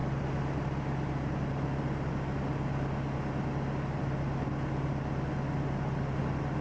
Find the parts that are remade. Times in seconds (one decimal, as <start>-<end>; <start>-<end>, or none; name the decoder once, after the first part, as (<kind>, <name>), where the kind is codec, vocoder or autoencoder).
none